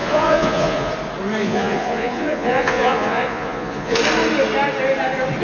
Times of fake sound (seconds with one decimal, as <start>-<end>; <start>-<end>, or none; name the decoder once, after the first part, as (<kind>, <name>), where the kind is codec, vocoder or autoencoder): 0.0-0.9 (vocoder, Vocos); 1.4-4.0